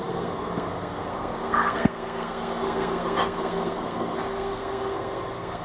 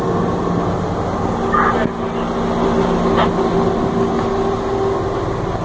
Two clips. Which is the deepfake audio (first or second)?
first